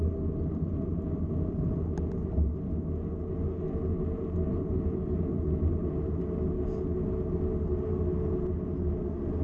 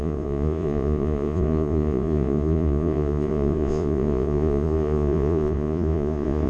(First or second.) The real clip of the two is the first